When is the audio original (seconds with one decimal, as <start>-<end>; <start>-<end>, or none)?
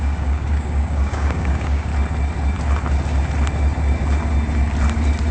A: 1.9-5.3